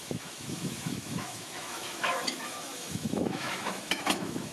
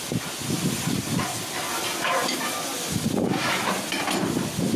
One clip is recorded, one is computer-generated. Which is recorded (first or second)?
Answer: second